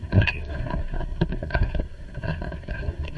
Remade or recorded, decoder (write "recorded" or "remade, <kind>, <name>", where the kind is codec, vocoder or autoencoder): remade, codec, SNAC